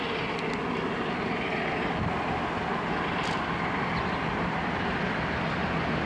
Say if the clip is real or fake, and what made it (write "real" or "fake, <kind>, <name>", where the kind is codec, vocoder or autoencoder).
real